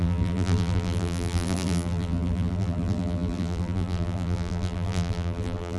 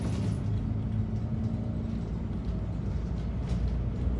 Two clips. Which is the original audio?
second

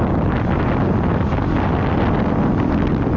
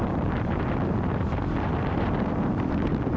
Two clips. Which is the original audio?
first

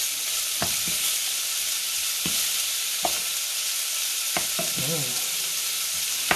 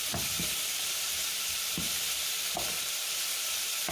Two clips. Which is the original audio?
first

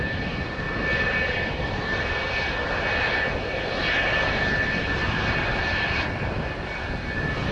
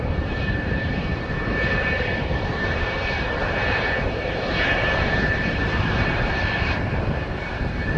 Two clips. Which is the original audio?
first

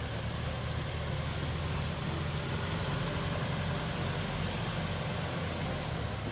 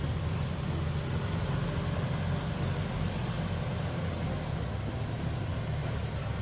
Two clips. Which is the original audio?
first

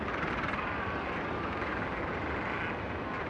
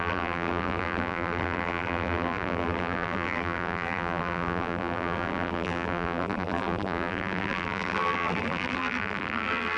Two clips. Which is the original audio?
first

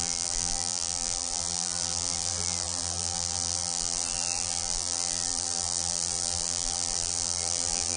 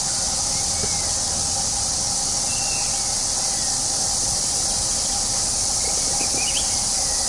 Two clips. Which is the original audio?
second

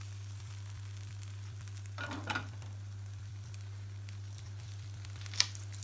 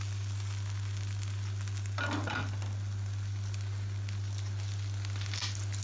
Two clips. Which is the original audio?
second